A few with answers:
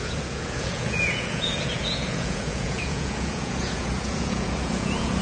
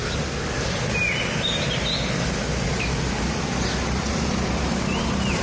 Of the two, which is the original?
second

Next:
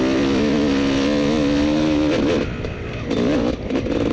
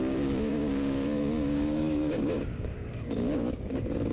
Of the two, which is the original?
first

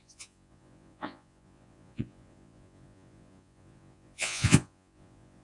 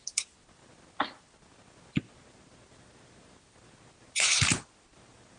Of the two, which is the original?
second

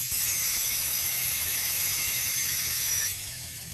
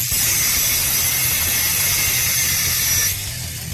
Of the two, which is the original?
second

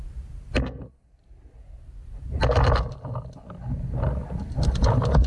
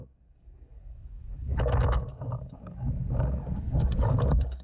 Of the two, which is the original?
first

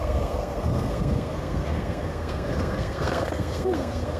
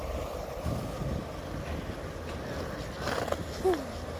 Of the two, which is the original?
second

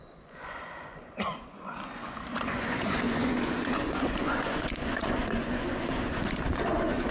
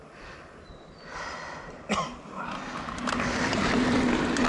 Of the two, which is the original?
second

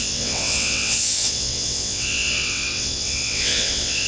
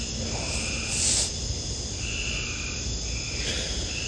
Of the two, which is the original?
second